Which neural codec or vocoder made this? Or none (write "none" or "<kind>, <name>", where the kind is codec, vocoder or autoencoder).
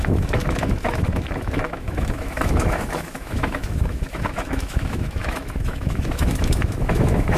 autoencoder, DAC-VAE